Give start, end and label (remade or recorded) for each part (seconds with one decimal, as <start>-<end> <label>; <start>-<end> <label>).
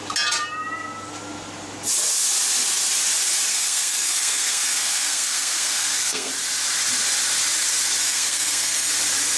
0.0-3.5 recorded; 3.5-6.3 remade; 6.3-8.0 recorded; 8.0-8.9 remade; 8.9-9.4 recorded